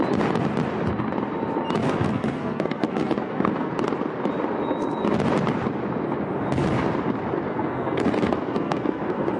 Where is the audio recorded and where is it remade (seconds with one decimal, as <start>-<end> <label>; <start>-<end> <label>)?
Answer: 0.0-1.8 recorded; 1.8-3.7 remade; 3.7-7.5 recorded; 7.5-9.4 remade